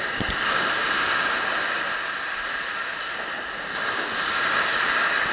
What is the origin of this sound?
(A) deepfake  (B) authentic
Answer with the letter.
B